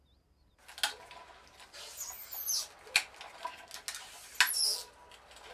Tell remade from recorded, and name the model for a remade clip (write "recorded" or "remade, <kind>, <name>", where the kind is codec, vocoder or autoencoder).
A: recorded